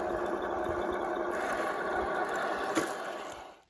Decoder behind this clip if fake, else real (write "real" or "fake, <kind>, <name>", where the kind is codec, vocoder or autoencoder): real